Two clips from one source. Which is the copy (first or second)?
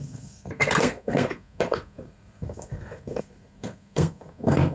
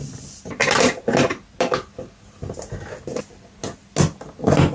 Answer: first